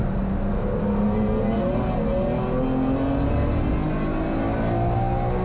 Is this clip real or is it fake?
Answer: real